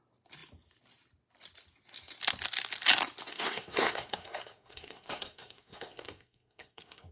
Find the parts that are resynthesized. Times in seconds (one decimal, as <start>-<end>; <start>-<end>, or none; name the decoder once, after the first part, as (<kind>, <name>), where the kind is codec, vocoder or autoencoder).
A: 3.3-7.1 (codec, SNAC)